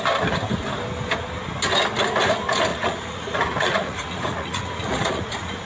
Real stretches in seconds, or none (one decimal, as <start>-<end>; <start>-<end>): 0.0-2.7